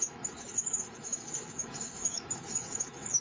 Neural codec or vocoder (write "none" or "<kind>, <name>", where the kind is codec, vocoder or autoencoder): autoencoder, DAC-VAE